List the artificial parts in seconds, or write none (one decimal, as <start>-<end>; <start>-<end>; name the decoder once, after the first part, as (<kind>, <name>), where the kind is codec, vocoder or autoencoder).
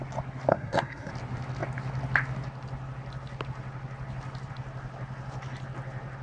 0.5-1.1 (codec, SNAC)